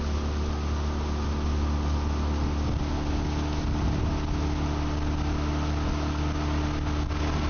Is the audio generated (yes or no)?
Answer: no